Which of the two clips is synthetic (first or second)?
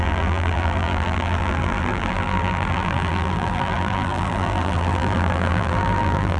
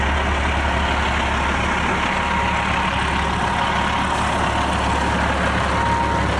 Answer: first